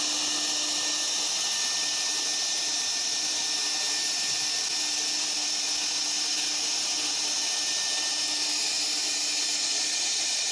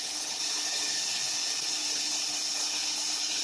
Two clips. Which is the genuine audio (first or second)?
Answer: first